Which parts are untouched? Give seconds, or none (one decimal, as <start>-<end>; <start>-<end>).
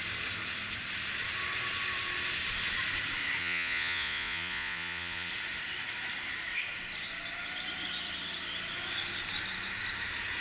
0.0-3.4; 5.3-10.4